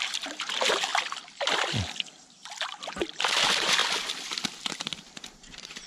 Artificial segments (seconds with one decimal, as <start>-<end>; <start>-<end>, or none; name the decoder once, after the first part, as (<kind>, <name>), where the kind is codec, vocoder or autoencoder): 0.0-0.9 (vocoder, BigVGAN v2); 3.4-3.8; 5.1-5.9

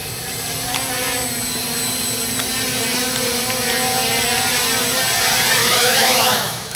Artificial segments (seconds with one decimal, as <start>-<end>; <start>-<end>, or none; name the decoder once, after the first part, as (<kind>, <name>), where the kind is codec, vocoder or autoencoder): 5.6-6.8 (autoencoder, DAC-VAE)

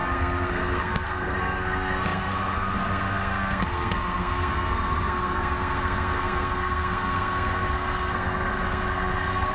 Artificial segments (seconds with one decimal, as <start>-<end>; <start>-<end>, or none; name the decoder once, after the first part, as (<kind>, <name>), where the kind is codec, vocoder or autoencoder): 0.0-9.5 (codec, SNAC)

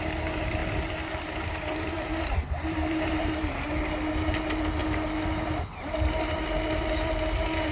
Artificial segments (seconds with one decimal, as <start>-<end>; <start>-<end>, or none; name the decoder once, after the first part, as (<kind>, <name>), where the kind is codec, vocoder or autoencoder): 0.6-3.5 (vocoder, BigVGAN v2)

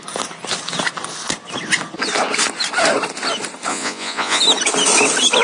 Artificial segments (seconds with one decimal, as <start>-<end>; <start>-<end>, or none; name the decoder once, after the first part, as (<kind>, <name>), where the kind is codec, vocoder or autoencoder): 3.7-4.4 (vocoder, Vocos)

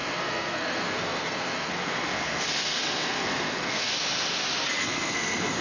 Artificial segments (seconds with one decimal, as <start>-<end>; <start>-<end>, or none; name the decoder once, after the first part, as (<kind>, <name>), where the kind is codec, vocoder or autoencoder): 0.0-3.9 (codec, SNAC); 4.8-5.6

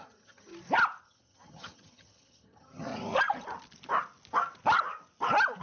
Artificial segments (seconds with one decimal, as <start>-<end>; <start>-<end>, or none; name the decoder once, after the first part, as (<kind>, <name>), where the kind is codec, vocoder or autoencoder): 0.0-0.5 (vocoder, HiFi-GAN); 1.0-2.9

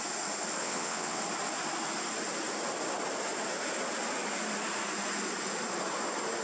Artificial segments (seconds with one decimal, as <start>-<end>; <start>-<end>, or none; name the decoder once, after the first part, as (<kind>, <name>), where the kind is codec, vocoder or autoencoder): 0.6-1.2 (vocoder, WaveNeXt)